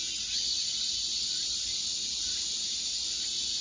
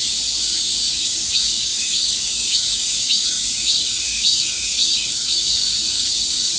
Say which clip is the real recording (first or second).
first